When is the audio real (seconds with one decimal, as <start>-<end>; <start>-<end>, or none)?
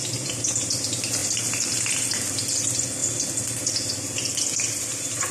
0.0-5.3